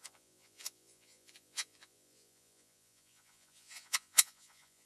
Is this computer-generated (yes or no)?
yes